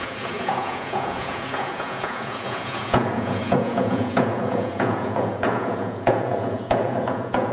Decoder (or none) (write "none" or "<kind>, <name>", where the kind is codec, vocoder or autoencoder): vocoder, Vocos